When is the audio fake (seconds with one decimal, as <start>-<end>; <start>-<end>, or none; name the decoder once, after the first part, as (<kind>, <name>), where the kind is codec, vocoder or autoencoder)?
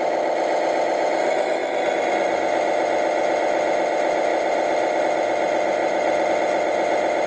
4.3-5.0 (vocoder, BigVGAN v2); 5.8-6.3